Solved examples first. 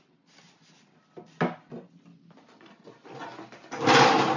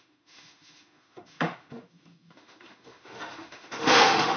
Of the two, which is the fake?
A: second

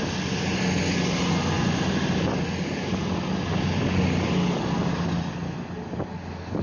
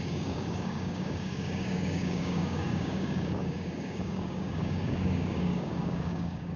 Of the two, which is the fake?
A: second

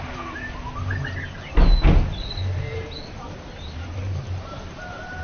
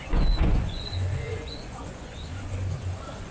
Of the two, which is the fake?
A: second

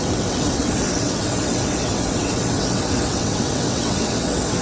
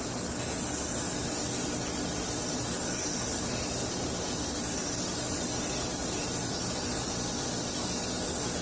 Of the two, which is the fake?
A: first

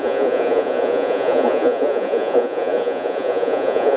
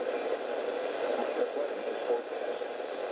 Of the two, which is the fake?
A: first